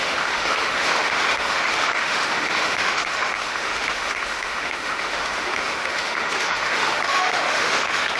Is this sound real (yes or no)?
no